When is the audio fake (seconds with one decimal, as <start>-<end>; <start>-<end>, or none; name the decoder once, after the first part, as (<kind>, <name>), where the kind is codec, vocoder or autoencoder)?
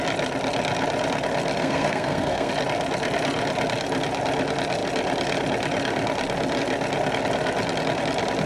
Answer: 1.6-2.5 (codec, SNAC)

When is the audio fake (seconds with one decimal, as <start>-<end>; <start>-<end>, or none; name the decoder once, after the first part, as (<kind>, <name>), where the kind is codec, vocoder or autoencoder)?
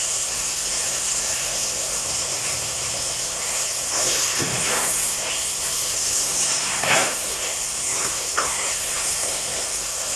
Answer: 0.0-10.2 (codec, SNAC)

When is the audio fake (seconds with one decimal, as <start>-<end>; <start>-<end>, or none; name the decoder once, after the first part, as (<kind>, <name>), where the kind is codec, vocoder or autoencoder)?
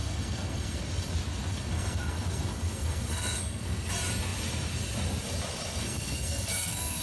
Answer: 0.0-0.8 (codec, SNAC); 1.5-3.9; 5.8-7.0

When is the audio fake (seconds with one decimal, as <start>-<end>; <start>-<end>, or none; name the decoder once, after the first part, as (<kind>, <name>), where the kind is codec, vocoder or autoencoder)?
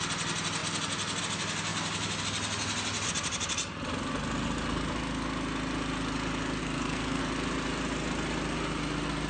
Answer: 6.6-7.2 (codec, SNAC)